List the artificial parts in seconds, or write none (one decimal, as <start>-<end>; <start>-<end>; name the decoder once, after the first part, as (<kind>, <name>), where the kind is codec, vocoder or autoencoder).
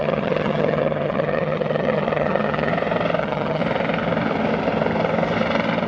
0.0-2.7 (vocoder, HiFi-GAN); 3.2-3.6